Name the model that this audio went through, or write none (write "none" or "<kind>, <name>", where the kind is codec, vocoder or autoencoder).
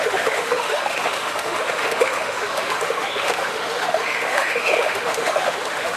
autoencoder, DAC-VAE